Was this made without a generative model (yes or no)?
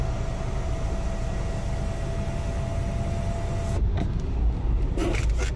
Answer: yes